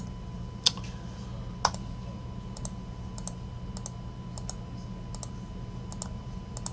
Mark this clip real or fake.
real